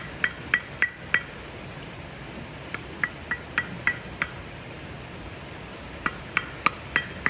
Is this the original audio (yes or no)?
yes